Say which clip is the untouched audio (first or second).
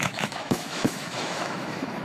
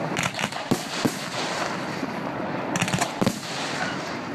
second